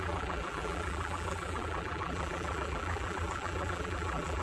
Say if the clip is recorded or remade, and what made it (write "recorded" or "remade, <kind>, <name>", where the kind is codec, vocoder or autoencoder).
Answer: remade, vocoder, BigVGAN v2